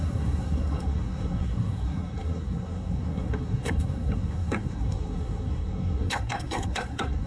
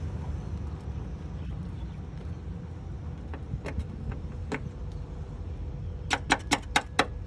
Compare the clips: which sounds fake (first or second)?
first